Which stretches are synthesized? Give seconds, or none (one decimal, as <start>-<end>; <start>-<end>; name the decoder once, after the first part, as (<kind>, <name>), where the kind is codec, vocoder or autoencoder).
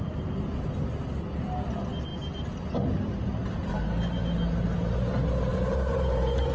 5.5-6.5 (vocoder, BigVGAN v2)